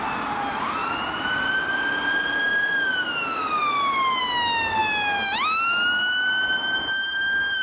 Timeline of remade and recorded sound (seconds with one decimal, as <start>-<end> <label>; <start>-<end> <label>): 0.0-7.6 recorded